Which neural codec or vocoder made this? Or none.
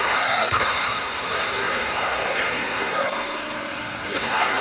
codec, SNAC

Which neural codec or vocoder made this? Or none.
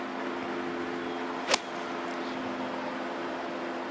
none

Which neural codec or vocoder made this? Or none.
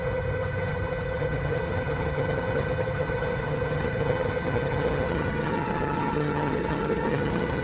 vocoder, HiFi-GAN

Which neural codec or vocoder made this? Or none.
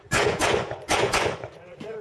vocoder, Vocos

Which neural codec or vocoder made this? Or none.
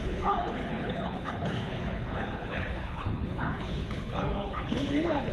codec, HILCodec